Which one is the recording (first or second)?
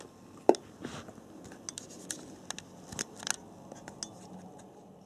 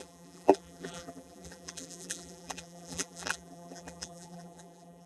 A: first